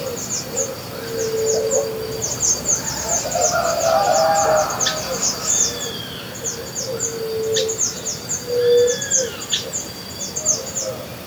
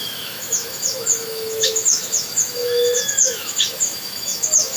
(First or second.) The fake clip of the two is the second